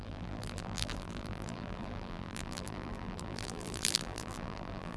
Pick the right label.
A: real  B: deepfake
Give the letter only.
B